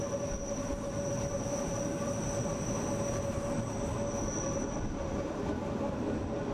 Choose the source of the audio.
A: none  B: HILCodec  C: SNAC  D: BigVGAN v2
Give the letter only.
A